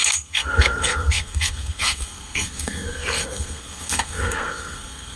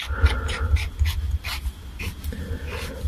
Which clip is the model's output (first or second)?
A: first